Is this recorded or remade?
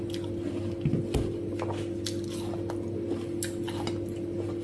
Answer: recorded